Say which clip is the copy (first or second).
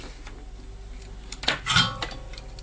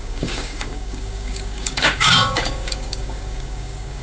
second